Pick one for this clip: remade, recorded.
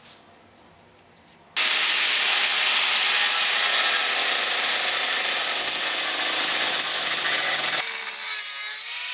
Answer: recorded